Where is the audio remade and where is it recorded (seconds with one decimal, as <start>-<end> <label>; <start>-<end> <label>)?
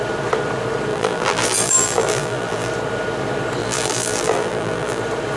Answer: 0.0-0.9 recorded; 0.9-2.7 remade; 2.7-3.6 recorded; 3.6-5.0 remade; 5.0-5.4 recorded